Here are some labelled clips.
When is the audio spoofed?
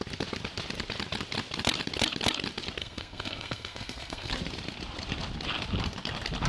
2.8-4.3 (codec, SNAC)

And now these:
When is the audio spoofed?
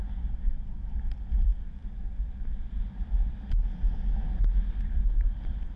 none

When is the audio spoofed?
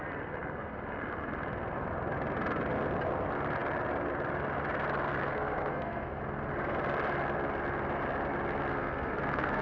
5.2-6.2 (codec, SNAC); 8.7-9.6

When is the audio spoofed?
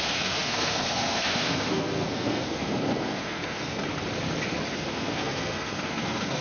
0.0-3.8 (codec, SNAC); 4.7-6.4